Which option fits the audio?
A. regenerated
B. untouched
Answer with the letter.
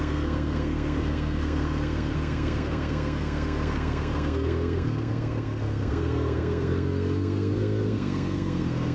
A